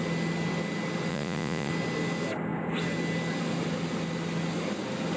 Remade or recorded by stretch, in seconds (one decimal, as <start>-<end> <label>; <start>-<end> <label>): 0.0-1.1 recorded; 1.1-1.7 remade; 1.7-5.2 recorded